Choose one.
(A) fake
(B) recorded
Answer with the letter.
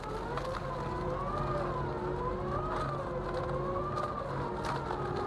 B